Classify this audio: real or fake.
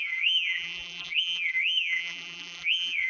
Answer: fake